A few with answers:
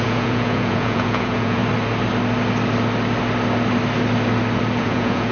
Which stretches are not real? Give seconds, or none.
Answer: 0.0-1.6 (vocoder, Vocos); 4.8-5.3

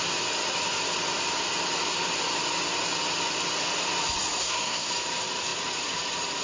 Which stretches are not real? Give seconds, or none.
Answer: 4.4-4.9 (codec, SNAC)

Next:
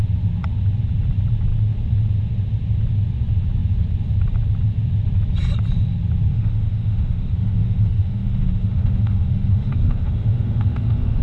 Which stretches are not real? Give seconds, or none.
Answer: 6.3-11.2 (autoencoder, DAC-VAE)

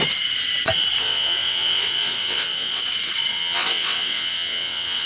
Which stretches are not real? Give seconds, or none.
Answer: 1.0-2.8 (vocoder, WaveNeXt); 3.3-5.1

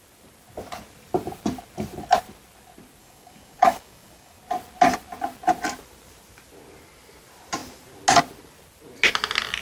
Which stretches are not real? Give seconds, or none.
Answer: 3.0-4.4 (codec, DAC)

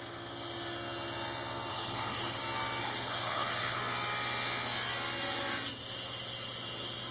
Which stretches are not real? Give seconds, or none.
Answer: 1.7-2.4 (codec, HILCodec); 2.8-3.8

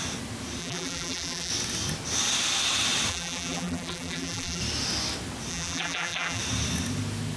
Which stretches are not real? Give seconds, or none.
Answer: 0.6-1.5 (vocoder, BigVGAN v2); 3.1-4.6; 5.5-6.4

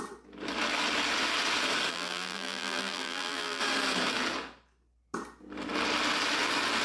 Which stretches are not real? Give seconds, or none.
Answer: 1.9-3.6 (vocoder, BigVGAN v2)